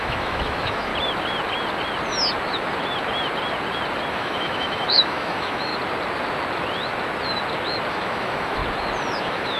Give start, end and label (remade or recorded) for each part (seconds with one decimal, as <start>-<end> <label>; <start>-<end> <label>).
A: 0.0-0.9 remade; 0.9-4.1 recorded; 4.1-5.7 remade; 5.7-7.9 recorded; 7.9-8.6 remade; 8.6-9.2 recorded; 9.2-9.6 remade